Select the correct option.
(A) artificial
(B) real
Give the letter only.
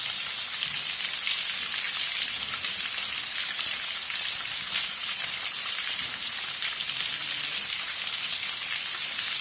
B